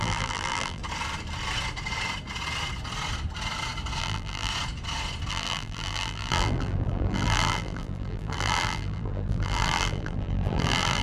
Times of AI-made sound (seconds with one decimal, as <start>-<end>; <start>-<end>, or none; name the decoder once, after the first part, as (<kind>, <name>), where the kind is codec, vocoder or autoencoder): 0.0-0.8 (vocoder, BigVGAN v2); 4.0-4.5; 5.3-11.0